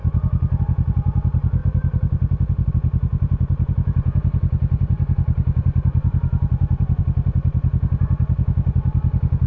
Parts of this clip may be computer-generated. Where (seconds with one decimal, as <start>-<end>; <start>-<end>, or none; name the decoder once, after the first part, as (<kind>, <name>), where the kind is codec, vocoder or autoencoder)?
1.6-2.7 (vocoder, BigVGAN v2); 3.1-7.0

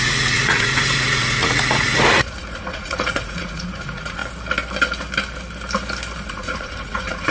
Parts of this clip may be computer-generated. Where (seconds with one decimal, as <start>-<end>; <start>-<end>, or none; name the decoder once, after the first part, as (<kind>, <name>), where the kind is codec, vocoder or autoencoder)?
0.0-4.2 (vocoder, Vocos); 6.3-7.3

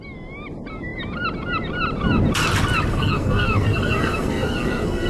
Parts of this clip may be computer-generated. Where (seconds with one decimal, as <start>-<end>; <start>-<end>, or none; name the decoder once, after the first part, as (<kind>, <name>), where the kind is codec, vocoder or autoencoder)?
2.9-5.1 (codec, SNAC)

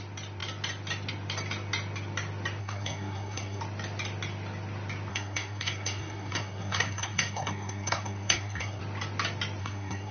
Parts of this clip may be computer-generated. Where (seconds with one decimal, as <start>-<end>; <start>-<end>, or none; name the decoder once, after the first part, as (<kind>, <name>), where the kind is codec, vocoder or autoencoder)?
2.6-3.6 (codec, SNAC); 5.1-8.8; 9.6-10.1